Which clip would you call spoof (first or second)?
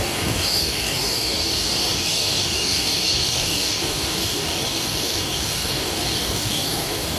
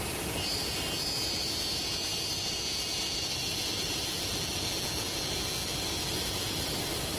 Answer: first